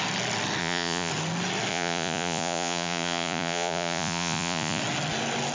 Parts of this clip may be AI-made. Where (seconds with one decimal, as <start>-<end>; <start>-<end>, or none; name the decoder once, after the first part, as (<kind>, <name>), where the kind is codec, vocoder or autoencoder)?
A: 0.6-1.1 (vocoder, Vocos); 1.7-4.8